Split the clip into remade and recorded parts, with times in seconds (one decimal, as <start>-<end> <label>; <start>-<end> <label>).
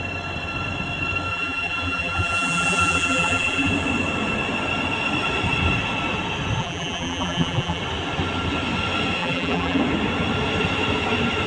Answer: 0.0-1.3 recorded; 1.3-3.7 remade; 3.7-6.6 recorded; 6.6-7.8 remade; 7.8-9.2 recorded; 9.2-9.8 remade; 9.8-11.5 recorded